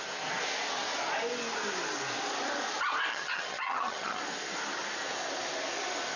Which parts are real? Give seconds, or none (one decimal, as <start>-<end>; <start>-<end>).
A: 0.0-3.1; 4.2-6.2